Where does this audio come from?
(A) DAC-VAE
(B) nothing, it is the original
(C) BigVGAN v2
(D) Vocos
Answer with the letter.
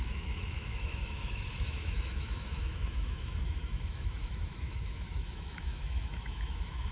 A